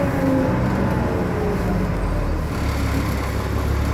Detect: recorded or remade recorded